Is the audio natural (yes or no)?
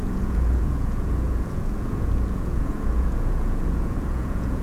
no